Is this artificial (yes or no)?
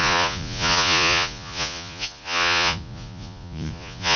yes